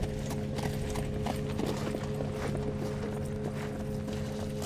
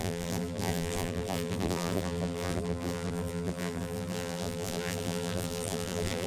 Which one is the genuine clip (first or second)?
first